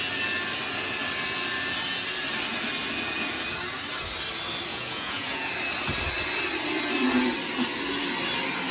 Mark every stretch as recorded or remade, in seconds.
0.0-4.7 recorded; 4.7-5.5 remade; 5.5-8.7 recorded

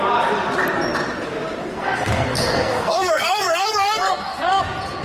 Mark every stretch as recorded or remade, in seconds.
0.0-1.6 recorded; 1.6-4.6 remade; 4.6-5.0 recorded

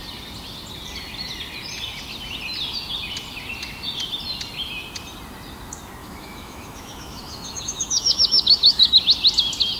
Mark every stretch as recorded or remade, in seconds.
0.0-6.0 recorded; 6.0-9.0 remade; 9.0-9.8 recorded

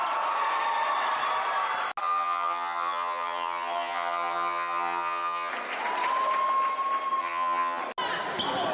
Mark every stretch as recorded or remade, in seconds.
0.0-2.0 recorded; 2.0-5.5 remade; 5.5-7.2 recorded; 7.2-7.8 remade; 7.8-8.7 recorded

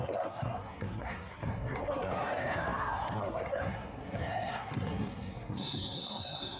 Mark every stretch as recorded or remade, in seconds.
0.0-6.6 remade

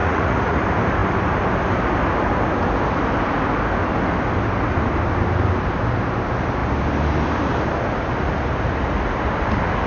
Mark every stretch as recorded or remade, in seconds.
0.0-0.6 remade; 0.6-9.9 recorded

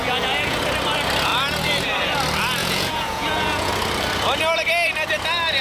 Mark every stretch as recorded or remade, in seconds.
0.0-0.6 remade; 0.6-2.6 recorded; 2.6-3.7 remade; 3.7-5.6 recorded

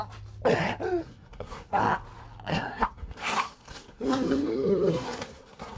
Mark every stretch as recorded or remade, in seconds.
0.0-1.0 recorded; 1.0-1.8 remade; 1.8-2.5 recorded; 2.5-5.8 remade